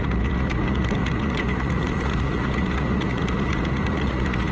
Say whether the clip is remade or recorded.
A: remade